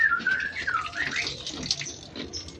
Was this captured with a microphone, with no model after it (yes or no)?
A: yes